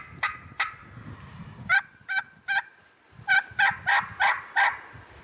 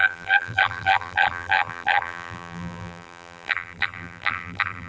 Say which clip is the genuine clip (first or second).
first